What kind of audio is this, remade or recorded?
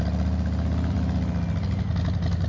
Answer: recorded